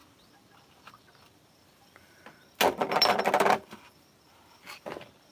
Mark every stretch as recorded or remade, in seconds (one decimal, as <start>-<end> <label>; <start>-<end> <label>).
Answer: 0.0-5.3 recorded